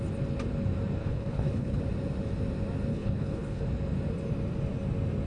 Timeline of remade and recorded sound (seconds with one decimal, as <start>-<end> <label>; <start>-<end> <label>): 0.0-1.0 recorded; 1.0-1.8 remade; 1.8-2.9 recorded; 2.9-3.6 remade; 3.6-5.3 recorded